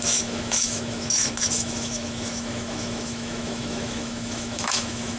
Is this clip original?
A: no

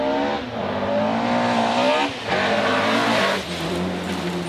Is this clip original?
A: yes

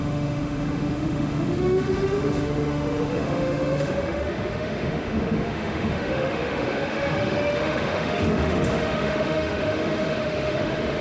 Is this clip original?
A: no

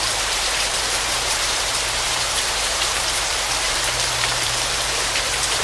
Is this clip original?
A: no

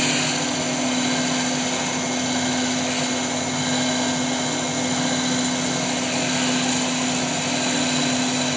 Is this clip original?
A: yes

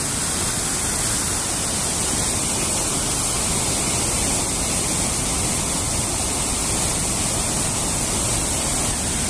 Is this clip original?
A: yes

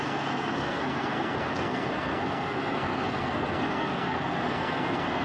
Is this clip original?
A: no